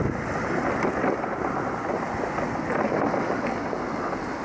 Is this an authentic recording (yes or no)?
yes